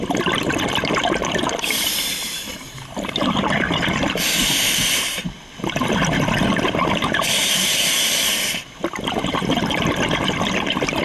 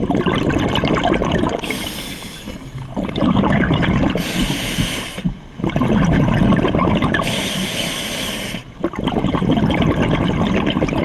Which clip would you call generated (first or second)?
first